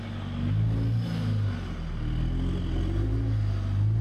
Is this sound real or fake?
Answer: real